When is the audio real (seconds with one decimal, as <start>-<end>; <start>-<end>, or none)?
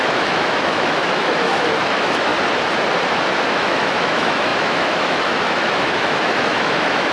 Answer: 2.3-3.5